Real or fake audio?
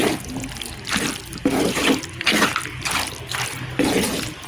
real